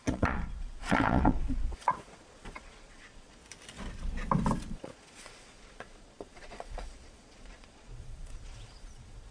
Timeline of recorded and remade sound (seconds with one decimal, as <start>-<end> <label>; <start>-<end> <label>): 0.0-3.4 remade; 3.4-4.7 recorded; 4.7-9.3 remade